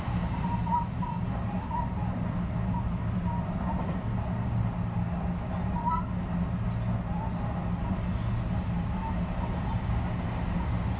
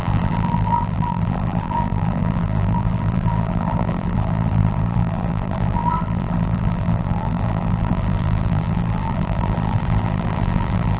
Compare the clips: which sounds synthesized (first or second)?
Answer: second